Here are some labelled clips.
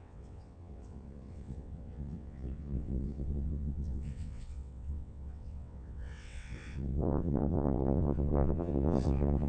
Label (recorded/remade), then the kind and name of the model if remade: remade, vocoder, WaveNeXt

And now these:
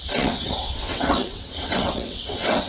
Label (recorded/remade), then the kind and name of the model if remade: remade, vocoder, WaveNeXt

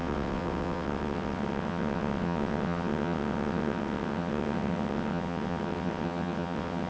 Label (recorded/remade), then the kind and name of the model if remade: remade, vocoder, WaveNeXt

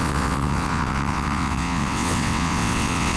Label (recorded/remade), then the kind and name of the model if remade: remade, vocoder, WaveNeXt